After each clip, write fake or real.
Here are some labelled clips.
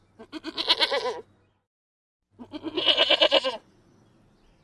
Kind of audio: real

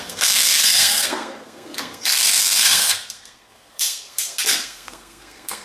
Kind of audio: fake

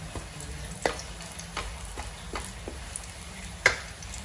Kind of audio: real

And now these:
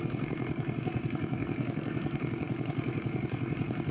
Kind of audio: fake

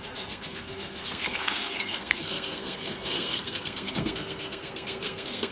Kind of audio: fake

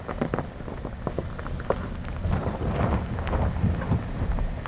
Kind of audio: real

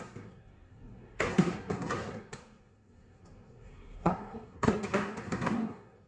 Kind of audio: fake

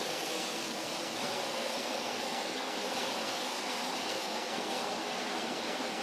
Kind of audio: fake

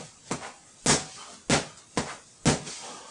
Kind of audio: real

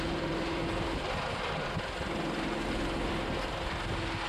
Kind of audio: real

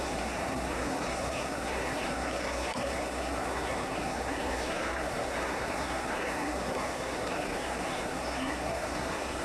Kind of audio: fake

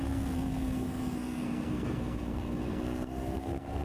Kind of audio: fake